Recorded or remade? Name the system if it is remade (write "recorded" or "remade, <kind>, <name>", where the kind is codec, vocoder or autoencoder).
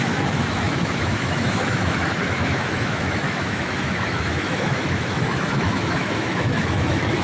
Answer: remade, autoencoder, DAC-VAE